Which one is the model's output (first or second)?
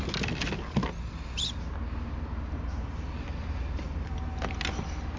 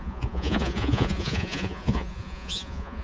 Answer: second